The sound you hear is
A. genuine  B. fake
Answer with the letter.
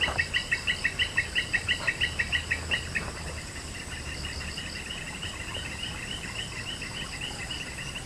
B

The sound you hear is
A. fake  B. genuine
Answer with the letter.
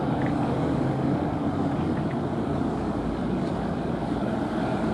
A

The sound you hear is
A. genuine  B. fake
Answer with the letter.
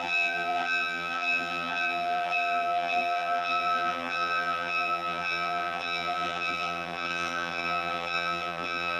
B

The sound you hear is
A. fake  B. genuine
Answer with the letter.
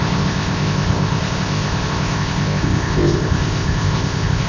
A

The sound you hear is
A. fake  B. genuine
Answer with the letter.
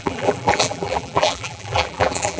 A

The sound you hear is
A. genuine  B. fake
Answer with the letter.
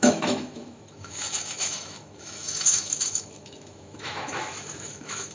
B